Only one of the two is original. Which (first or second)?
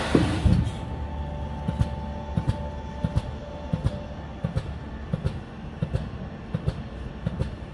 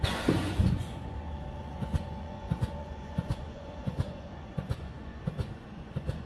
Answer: first